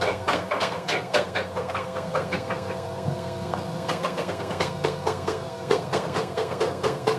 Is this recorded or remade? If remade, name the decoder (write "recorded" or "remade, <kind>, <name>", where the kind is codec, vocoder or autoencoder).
remade, codec, SNAC